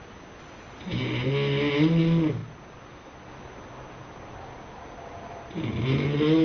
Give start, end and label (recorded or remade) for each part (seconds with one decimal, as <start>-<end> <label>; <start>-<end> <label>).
0.0-6.4 recorded

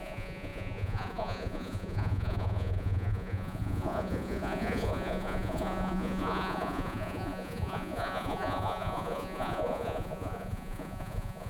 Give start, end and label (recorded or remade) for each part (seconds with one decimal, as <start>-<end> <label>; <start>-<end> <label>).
0.0-11.5 remade

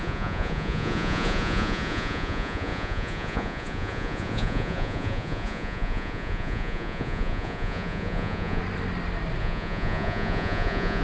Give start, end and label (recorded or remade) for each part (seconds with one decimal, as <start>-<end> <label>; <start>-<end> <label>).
0.0-8.6 remade; 8.6-9.4 recorded; 9.4-11.0 remade

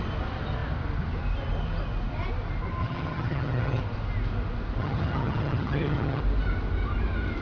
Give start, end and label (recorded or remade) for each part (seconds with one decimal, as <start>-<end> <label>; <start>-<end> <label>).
0.0-2.8 recorded; 2.8-3.8 remade; 3.8-4.8 recorded; 4.8-6.2 remade; 6.2-7.4 recorded

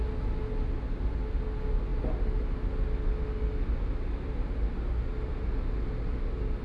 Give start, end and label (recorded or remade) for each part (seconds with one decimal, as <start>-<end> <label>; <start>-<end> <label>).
0.0-6.6 recorded